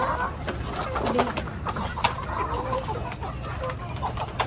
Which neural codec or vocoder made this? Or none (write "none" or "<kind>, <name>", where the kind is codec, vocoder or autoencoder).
none